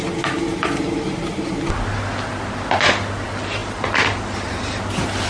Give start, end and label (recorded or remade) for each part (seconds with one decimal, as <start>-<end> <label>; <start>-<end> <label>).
0.0-0.4 recorded; 0.4-1.5 remade; 1.5-5.3 recorded